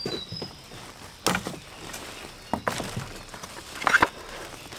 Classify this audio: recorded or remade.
recorded